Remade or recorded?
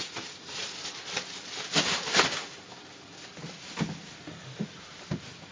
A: recorded